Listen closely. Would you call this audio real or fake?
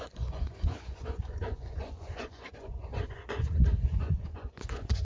fake